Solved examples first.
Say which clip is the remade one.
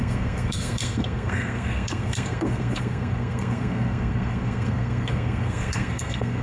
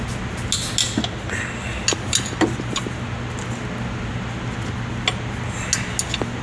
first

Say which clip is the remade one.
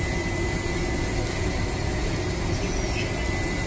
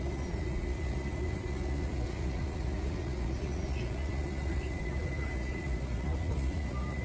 second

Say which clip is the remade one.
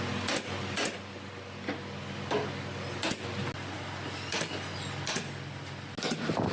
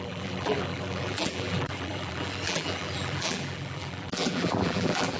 second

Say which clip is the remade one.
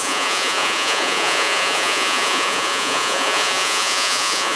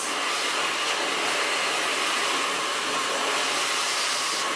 first